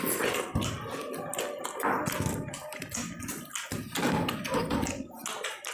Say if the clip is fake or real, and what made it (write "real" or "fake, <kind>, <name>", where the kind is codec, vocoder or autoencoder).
real